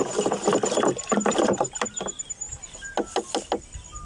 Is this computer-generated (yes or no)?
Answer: no